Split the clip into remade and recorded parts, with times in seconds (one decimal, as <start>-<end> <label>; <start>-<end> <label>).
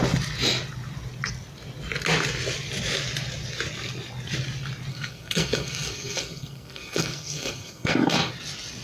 0.0-4.9 recorded; 4.9-8.3 remade; 8.3-8.8 recorded